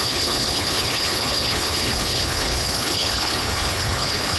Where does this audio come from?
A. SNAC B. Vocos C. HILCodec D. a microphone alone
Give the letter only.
C